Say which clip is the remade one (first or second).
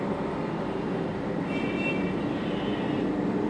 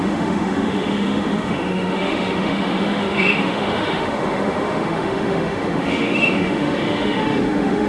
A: second